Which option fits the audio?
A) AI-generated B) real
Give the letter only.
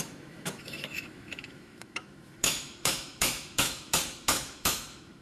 A